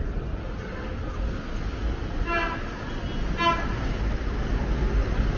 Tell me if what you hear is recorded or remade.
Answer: recorded